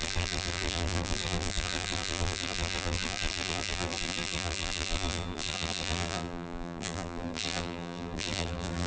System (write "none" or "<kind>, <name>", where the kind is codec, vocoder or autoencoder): vocoder, BigVGAN v2